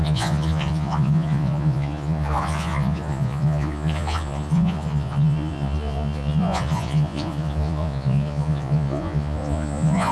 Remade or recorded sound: remade